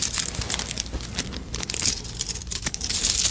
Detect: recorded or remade recorded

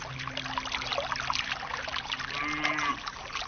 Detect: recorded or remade recorded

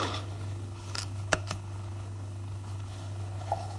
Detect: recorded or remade remade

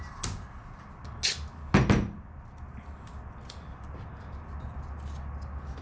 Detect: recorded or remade recorded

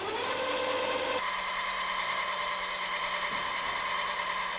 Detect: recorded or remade recorded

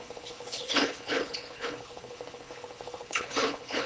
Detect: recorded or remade remade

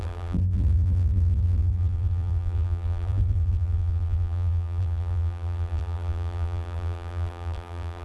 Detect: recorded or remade remade